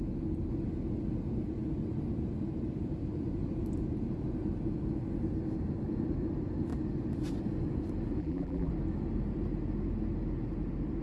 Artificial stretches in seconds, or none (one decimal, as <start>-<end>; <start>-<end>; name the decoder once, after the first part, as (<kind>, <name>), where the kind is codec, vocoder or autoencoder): 8.2-8.7 (vocoder, BigVGAN v2)